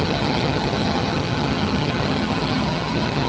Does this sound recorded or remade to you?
remade